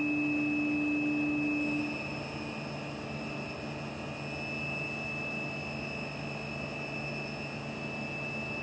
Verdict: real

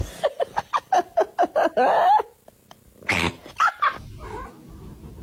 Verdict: real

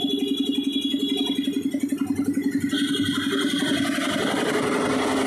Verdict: real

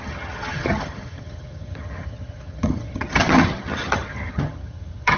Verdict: fake